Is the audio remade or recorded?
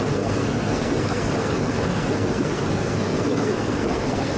remade